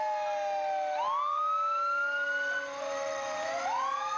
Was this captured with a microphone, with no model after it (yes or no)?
yes